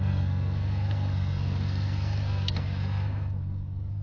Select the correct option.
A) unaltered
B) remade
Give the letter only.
B